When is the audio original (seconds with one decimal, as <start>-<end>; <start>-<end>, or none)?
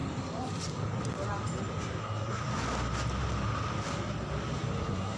0.0-2.0; 2.4-4.8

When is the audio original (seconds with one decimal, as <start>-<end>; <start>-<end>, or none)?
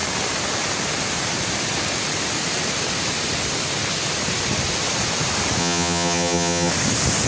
0.0-5.6; 6.7-7.3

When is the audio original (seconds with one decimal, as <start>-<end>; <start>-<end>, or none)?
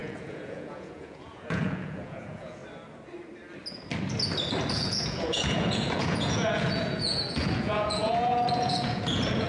2.6-4.7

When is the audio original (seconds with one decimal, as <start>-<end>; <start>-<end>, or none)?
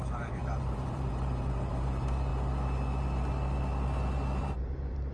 2.3-4.4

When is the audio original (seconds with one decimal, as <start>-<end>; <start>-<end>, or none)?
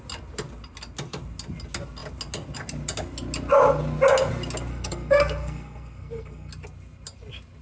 0.0-4.7; 6.5-7.6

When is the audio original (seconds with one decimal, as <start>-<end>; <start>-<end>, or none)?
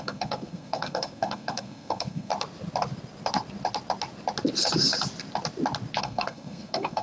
2.3-6.0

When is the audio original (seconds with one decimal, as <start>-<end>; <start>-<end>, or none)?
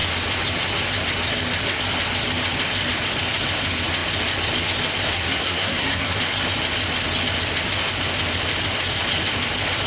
0.0-5.1; 6.2-9.9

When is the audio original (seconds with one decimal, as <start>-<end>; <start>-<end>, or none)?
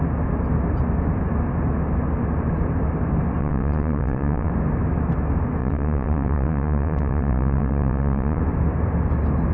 0.0-3.4; 4.5-5.6; 8.4-9.5